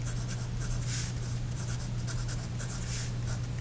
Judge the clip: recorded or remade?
recorded